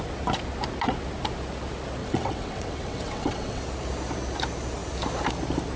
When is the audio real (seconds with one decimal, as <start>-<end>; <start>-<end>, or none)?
0.0-2.0; 3.6-5.8